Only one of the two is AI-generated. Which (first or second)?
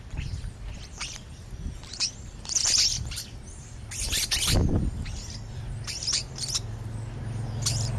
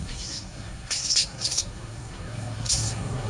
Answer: second